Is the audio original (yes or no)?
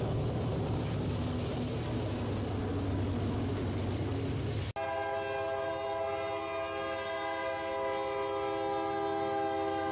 yes